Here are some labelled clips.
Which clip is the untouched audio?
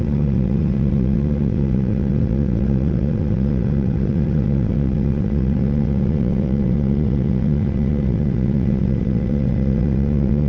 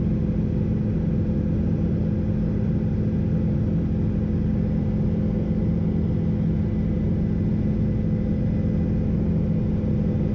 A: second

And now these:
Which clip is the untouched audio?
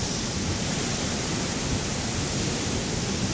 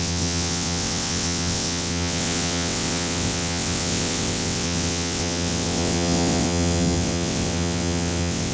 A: first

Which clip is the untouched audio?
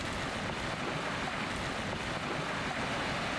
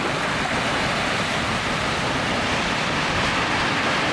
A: first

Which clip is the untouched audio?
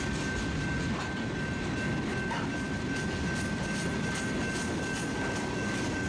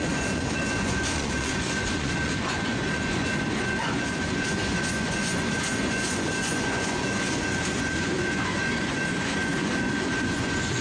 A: first